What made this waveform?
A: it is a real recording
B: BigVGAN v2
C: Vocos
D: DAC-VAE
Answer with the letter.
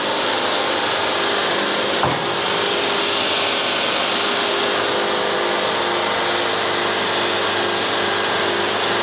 A